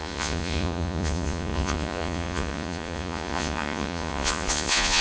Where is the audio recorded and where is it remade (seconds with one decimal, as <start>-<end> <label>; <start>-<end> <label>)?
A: 0.0-5.0 remade